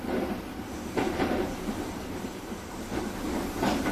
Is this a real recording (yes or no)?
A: no